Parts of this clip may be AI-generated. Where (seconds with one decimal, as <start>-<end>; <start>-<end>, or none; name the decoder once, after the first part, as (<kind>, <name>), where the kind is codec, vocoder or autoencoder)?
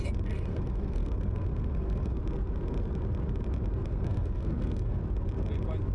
0.5-2.2 (codec, SNAC); 3.9-5.0